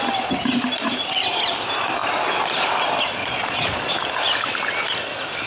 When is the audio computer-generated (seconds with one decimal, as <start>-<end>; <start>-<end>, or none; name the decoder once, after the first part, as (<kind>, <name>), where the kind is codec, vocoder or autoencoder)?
3.2-3.9 (vocoder, Vocos)